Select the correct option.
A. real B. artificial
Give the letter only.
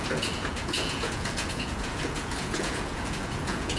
B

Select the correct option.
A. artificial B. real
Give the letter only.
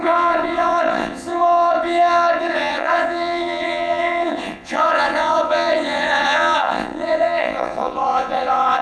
A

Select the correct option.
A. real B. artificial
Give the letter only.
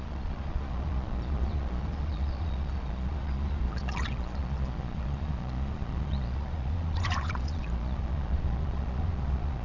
B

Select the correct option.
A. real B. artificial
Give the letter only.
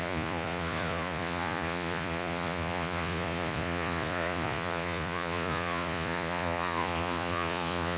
B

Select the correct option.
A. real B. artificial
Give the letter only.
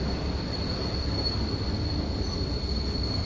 A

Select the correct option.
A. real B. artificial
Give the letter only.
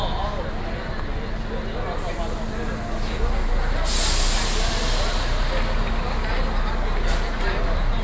A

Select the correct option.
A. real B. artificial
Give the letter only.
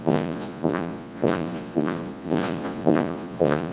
B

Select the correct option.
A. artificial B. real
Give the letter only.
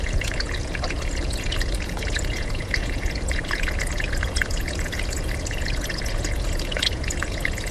A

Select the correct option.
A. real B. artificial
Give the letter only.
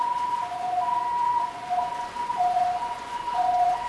B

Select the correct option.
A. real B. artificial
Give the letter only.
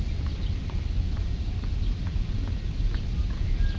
A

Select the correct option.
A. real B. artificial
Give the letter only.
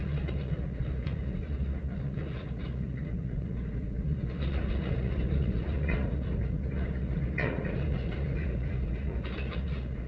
B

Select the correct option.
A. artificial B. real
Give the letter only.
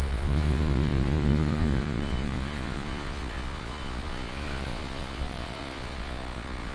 A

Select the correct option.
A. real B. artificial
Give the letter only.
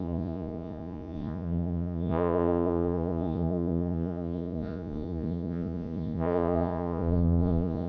B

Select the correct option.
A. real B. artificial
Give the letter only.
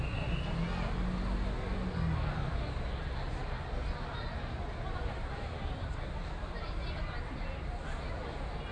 A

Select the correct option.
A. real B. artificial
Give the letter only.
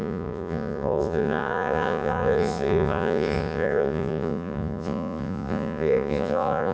B